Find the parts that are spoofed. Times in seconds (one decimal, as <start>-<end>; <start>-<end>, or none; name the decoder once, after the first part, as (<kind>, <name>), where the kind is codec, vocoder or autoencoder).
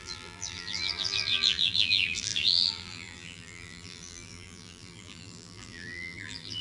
0.0-6.6 (vocoder, BigVGAN v2)